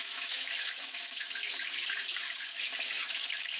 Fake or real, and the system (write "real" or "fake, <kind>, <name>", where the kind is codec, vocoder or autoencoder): fake, autoencoder, DAC-VAE